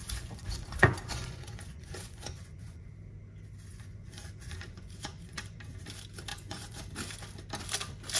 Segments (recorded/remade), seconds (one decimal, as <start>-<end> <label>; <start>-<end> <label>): 0.0-2.9 remade; 2.9-3.7 recorded; 3.7-5.6 remade; 5.6-6.3 recorded; 6.3-6.8 remade; 6.8-8.2 recorded